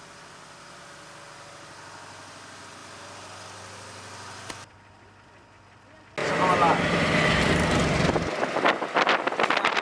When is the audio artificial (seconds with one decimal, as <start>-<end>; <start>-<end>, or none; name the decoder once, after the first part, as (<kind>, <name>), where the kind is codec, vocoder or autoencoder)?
none